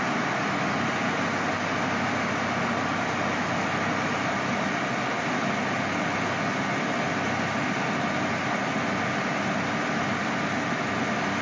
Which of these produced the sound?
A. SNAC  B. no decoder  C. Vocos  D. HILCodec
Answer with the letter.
B